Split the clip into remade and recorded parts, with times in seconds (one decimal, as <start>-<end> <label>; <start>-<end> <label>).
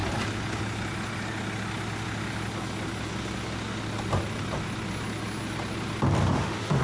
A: 0.0-6.2 recorded; 6.2-6.8 remade